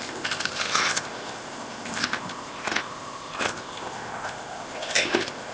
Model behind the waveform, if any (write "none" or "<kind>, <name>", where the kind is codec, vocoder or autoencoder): codec, ZipCodec